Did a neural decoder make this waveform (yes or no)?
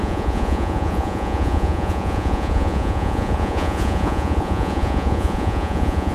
yes